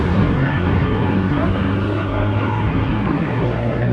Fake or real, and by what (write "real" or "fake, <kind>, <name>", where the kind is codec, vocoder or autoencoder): fake, codec, SNAC